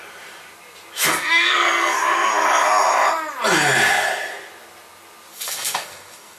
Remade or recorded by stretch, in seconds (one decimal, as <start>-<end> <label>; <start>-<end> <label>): 0.0-1.1 recorded; 1.1-2.0 remade; 2.0-5.3 recorded; 5.3-6.4 remade

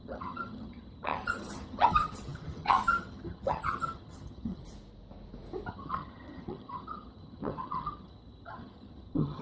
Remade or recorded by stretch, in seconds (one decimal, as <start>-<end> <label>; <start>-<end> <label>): 0.0-4.6 remade; 4.6-5.7 recorded; 5.7-9.4 remade

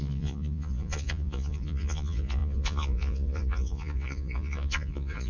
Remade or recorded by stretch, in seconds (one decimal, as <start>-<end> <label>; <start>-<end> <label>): 0.0-5.3 remade

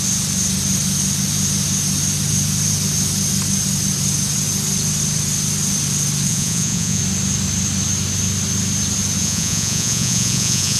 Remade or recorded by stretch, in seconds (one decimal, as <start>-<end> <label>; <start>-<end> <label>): 0.0-6.3 recorded; 6.3-7.0 remade; 7.0-9.2 recorded; 9.2-10.8 remade

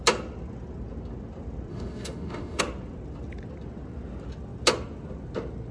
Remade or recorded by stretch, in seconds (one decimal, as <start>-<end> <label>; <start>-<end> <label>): 0.0-1.7 recorded; 1.7-2.6 remade; 2.6-5.7 recorded

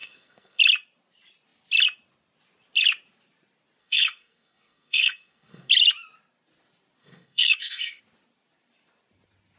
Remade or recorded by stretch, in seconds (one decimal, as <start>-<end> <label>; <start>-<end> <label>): 0.0-0.6 remade; 0.6-3.8 recorded; 3.8-5.7 remade; 5.7-7.0 recorded; 7.0-8.0 remade; 8.0-9.6 recorded